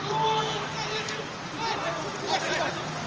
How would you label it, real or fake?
real